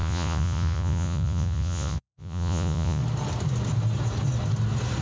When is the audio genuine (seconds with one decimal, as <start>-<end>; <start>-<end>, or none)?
3.0-5.0